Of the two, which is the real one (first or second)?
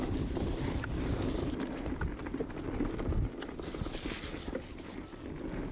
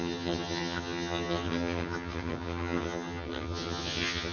first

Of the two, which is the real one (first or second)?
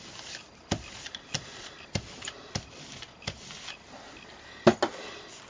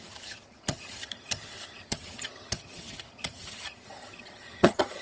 first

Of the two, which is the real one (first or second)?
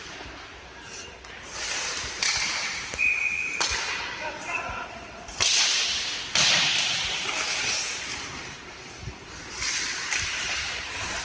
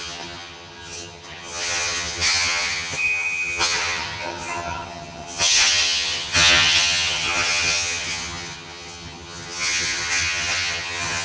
first